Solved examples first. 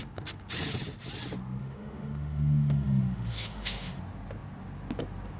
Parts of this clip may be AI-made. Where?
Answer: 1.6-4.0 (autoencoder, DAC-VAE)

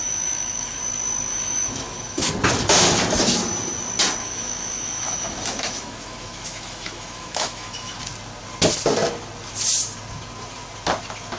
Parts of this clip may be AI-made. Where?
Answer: 0.0-0.8 (autoencoder, DAC-VAE); 1.3-2.3; 4.2-8.0